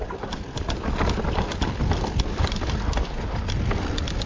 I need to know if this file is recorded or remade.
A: recorded